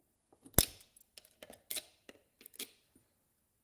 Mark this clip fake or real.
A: real